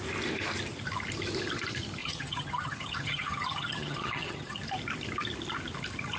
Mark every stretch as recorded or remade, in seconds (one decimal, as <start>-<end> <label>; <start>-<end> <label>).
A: 0.0-2.0 recorded; 2.0-4.6 remade; 4.6-6.2 recorded